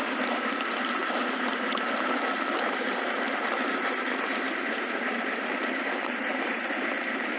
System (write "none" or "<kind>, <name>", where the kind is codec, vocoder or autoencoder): vocoder, BigVGAN v2